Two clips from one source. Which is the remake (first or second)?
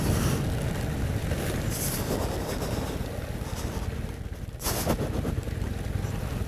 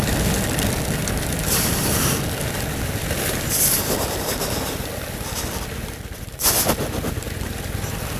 second